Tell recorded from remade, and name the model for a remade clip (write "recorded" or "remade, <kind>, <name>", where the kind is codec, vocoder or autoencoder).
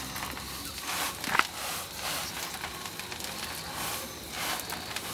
recorded